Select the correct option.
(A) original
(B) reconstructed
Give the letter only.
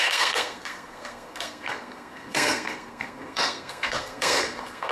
B